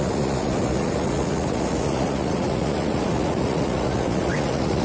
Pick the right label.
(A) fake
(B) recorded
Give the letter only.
A